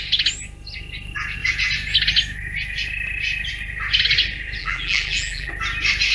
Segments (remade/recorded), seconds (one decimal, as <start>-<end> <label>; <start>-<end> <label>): 0.0-4.6 recorded; 4.6-5.5 remade; 5.5-6.1 recorded